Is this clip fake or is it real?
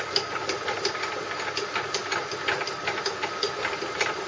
real